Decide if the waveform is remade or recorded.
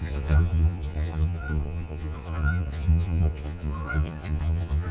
remade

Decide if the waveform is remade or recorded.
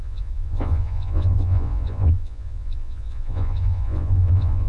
remade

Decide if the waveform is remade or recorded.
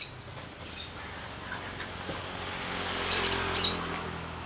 recorded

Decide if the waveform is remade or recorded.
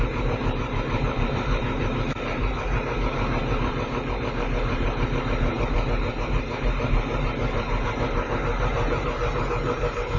remade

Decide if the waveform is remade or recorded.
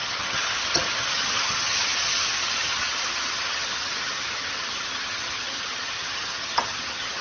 remade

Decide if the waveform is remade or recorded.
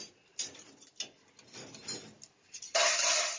recorded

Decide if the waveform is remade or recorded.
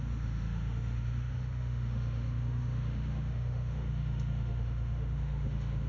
remade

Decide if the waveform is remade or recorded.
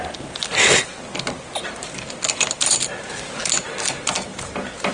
recorded